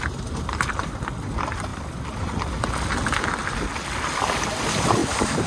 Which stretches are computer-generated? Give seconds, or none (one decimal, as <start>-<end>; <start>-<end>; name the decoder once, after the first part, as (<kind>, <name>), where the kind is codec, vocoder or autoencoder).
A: 5.0-5.5 (vocoder, BigVGAN v2)

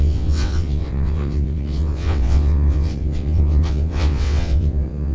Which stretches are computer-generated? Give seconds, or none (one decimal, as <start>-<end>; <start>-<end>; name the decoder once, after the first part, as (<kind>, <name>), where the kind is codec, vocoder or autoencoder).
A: 0.0-5.1 (vocoder, WaveNeXt)

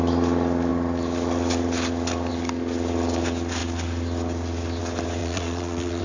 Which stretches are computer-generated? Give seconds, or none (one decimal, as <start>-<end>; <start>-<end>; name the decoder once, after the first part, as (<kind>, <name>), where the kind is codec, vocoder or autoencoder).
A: 5.2-6.0 (vocoder, Vocos)

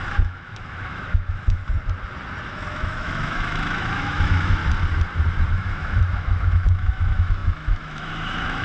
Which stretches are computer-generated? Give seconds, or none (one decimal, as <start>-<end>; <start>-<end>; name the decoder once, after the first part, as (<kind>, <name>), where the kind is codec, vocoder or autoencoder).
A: 0.0-1.6 (autoencoder, DAC-VAE); 2.4-4.6; 5.5-8.6

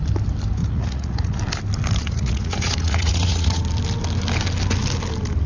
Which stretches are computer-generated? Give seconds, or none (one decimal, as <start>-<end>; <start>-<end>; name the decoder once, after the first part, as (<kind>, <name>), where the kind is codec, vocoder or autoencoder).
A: 0.6-1.4 (vocoder, Vocos); 2.0-3.6